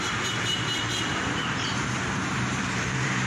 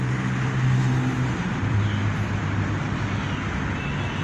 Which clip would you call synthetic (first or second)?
first